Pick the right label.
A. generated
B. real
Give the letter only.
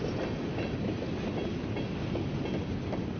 B